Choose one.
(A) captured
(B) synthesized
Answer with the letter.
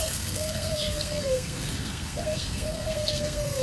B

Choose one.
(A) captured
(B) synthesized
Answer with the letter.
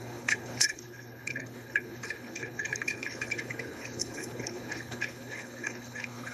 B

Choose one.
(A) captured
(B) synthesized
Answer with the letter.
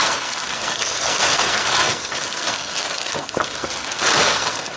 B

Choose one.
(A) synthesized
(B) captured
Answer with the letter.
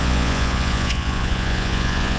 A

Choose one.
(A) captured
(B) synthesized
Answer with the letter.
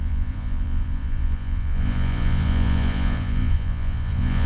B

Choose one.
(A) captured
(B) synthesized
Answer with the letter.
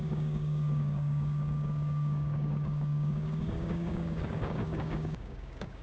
B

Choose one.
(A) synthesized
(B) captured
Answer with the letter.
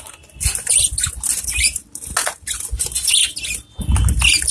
B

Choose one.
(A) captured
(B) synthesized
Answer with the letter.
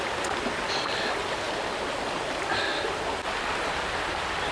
A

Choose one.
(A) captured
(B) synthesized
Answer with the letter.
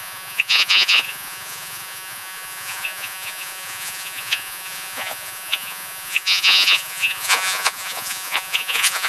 B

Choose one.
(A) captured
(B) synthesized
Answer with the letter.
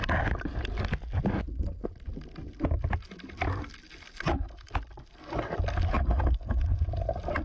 A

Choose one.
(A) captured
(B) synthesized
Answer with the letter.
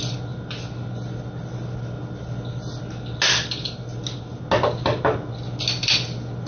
A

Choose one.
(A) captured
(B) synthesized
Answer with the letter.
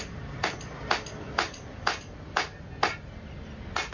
A